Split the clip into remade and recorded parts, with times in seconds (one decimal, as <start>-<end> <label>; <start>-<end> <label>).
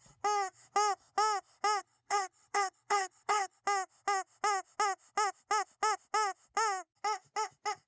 0.0-1.8 recorded; 1.8-3.6 remade; 3.6-7.9 recorded